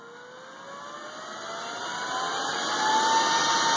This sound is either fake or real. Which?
real